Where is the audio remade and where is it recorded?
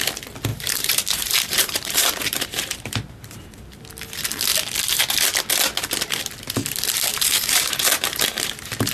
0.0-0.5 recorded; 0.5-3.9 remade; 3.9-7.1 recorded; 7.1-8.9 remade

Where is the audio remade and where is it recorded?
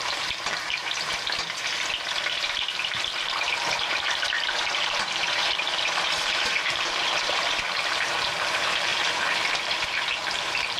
0.0-1.1 remade; 1.1-2.2 recorded; 2.2-8.9 remade; 8.9-9.5 recorded; 9.5-10.8 remade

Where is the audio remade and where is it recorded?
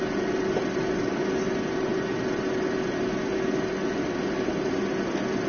0.0-5.5 recorded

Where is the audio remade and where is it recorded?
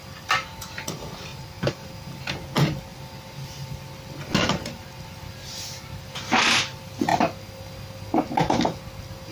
0.0-1.3 recorded; 1.3-1.9 remade; 1.9-9.3 recorded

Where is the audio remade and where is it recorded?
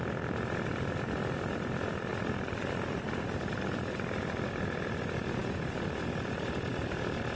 0.0-7.4 recorded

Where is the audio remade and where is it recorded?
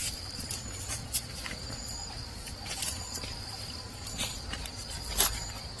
0.0-5.8 remade